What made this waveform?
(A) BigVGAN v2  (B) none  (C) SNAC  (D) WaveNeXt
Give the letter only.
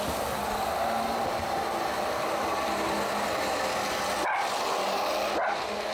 B